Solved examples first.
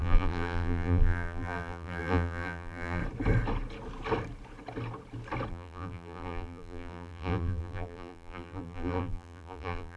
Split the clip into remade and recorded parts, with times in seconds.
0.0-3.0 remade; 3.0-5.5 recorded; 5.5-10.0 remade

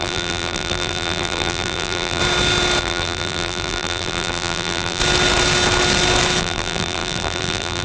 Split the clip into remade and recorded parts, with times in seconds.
0.0-2.2 remade; 2.2-2.8 recorded; 2.8-5.0 remade; 5.0-6.4 recorded; 6.4-7.8 remade

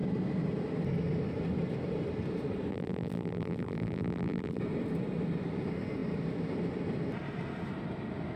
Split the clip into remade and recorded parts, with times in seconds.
0.0-2.7 recorded; 2.7-4.6 remade; 4.6-8.4 recorded

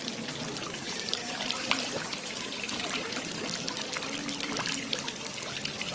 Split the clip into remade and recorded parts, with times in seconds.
0.0-0.8 recorded; 0.8-2.7 remade; 2.7-5.9 recorded